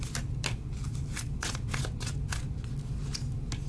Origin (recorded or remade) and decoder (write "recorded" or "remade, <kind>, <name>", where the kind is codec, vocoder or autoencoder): recorded